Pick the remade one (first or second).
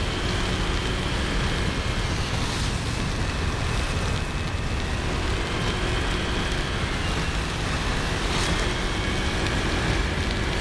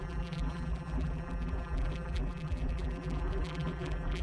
second